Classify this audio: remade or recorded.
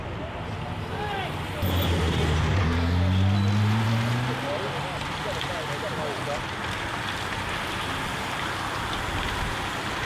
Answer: recorded